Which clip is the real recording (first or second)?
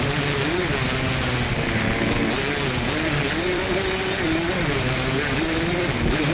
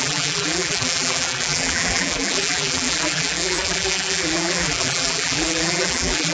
first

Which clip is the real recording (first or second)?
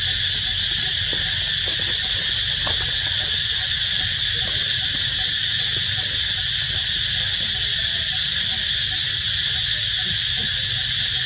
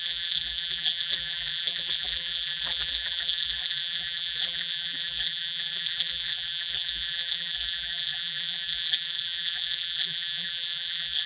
first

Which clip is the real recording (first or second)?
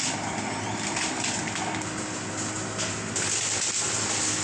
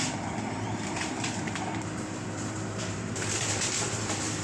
first